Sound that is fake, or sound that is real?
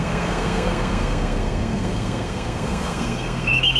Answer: fake